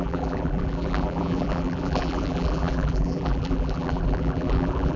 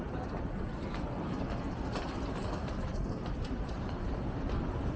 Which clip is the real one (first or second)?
second